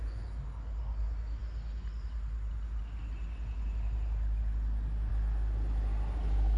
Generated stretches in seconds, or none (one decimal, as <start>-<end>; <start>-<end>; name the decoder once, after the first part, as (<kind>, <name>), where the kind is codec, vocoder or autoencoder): none